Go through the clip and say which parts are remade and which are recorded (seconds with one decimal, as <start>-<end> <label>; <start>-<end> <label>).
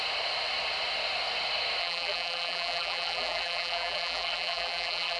0.0-1.8 recorded; 1.8-5.2 remade